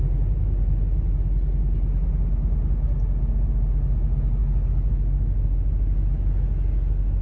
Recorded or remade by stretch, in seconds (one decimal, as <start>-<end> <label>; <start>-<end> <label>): 0.0-7.2 recorded